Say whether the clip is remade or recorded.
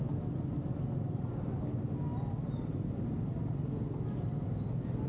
recorded